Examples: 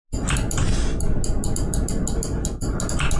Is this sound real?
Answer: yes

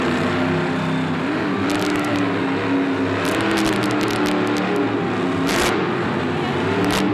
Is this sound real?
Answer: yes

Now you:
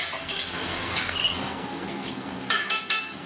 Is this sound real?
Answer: no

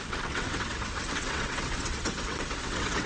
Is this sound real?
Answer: no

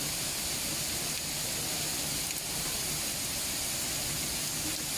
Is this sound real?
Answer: yes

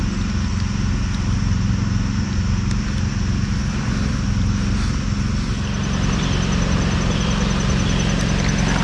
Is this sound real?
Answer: yes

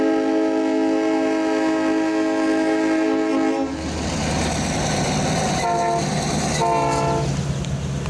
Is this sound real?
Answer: yes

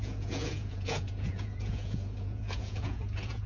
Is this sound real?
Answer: no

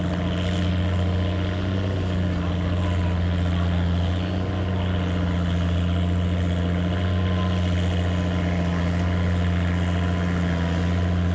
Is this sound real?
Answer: yes